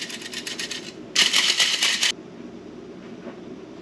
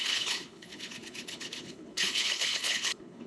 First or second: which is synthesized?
second